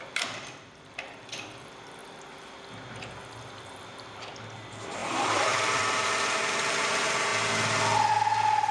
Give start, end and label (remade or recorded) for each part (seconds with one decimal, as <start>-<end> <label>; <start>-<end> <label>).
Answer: 0.0-2.0 remade; 2.0-3.4 recorded; 3.4-7.3 remade; 7.3-8.1 recorded; 8.1-8.7 remade

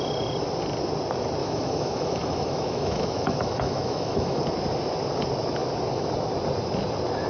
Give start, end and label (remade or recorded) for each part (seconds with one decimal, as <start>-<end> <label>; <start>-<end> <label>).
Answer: 0.0-1.4 recorded; 1.4-4.4 remade; 4.4-7.3 recorded

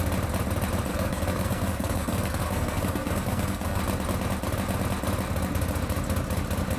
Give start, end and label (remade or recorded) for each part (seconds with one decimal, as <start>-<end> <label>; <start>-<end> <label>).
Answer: 0.0-0.9 recorded; 0.9-3.8 remade; 3.8-6.8 recorded